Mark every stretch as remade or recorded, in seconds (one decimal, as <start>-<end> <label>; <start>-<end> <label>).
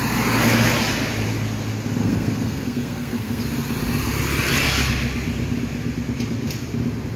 0.0-2.0 recorded; 2.0-3.4 remade; 3.4-7.2 recorded